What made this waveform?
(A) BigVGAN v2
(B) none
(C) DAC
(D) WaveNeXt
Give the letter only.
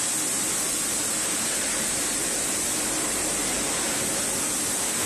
A